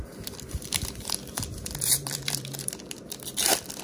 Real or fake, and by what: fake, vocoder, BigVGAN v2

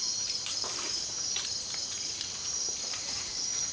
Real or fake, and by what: fake, vocoder, BigVGAN v2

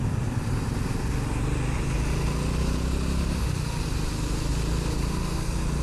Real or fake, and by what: real